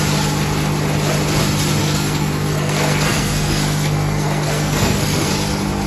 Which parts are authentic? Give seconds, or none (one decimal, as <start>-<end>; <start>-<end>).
0.0-1.8; 5.3-5.9